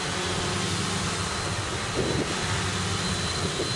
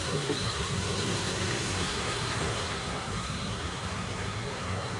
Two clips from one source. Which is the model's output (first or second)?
second